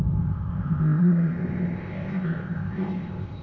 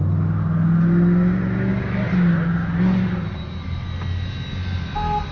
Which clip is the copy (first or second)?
first